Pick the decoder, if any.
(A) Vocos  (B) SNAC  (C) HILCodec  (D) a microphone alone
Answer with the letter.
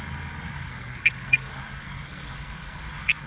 B